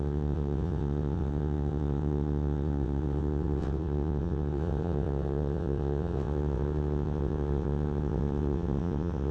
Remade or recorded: remade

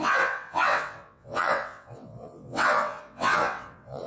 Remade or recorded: remade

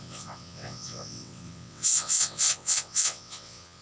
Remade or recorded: remade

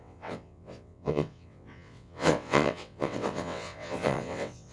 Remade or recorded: remade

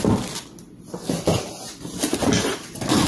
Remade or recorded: recorded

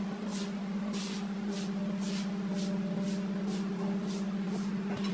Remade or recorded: recorded